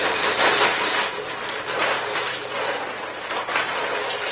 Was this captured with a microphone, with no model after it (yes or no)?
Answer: yes